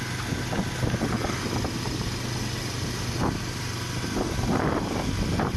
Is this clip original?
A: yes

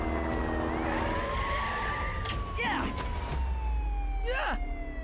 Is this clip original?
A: yes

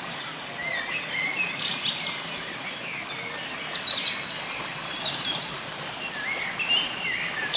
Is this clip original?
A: yes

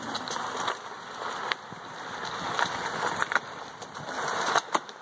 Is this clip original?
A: no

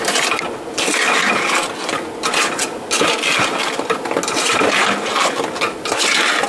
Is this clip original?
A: yes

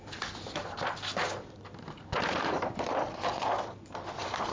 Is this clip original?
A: no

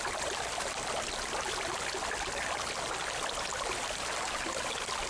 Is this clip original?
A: yes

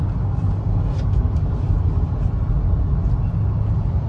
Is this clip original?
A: yes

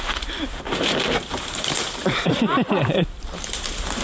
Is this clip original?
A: no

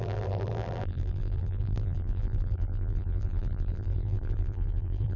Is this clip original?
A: no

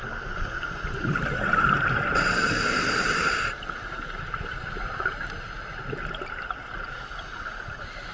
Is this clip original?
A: yes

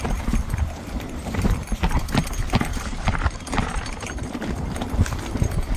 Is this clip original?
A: no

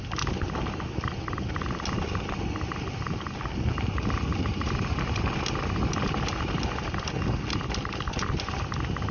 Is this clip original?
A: yes